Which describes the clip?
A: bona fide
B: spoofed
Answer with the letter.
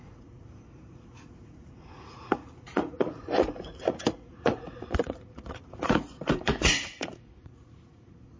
B